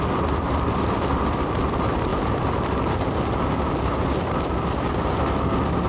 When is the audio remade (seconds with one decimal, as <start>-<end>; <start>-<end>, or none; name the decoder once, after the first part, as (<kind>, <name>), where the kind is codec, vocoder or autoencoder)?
none